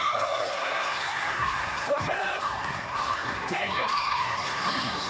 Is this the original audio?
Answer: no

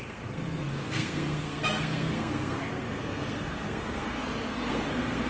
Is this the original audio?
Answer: no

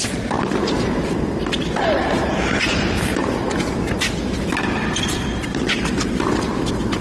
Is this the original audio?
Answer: yes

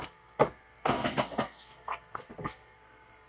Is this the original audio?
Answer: no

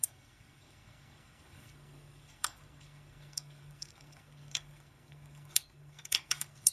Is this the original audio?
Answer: no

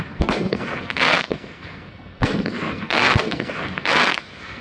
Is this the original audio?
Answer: no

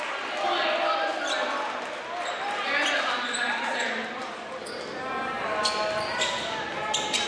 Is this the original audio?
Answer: yes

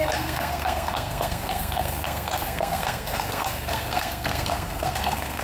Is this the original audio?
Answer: no